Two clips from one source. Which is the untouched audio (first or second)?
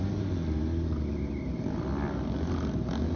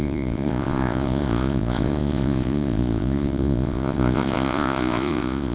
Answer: first